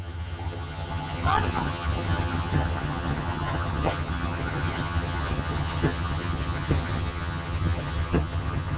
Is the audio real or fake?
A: fake